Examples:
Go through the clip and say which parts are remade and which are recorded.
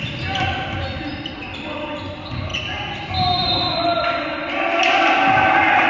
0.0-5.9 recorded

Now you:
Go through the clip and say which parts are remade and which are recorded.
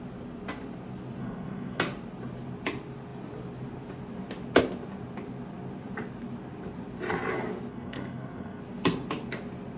0.0-1.2 recorded; 1.2-1.8 remade; 1.8-7.7 recorded; 7.7-8.6 remade; 8.6-9.8 recorded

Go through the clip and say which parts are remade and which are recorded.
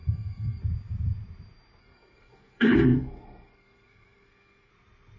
0.0-0.6 remade; 0.6-1.8 recorded; 1.8-4.7 remade; 4.7-5.2 recorded